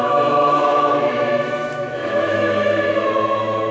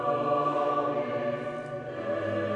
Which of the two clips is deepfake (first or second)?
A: first